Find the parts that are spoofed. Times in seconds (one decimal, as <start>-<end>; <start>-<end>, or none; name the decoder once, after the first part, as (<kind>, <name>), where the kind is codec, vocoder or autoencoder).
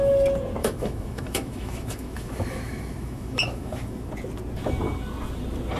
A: 0.6-4.1 (autoencoder, DAC-VAE)